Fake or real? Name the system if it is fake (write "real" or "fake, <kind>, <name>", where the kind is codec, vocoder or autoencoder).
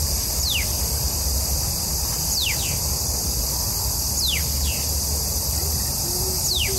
real